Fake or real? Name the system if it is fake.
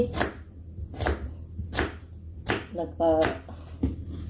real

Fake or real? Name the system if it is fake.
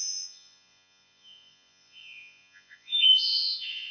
fake, vocoder, Vocos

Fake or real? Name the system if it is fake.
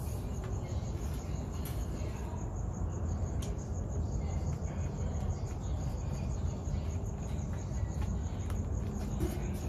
real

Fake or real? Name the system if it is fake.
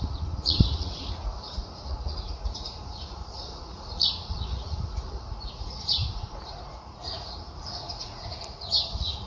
fake, vocoder, Vocos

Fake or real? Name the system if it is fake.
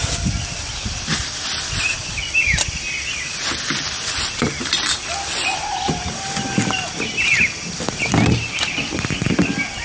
real